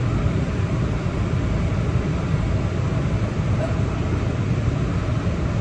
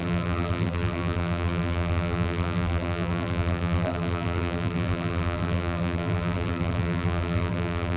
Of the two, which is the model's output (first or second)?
second